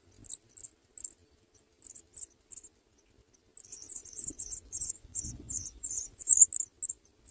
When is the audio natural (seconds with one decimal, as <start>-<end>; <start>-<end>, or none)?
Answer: 0.0-3.7; 6.3-7.3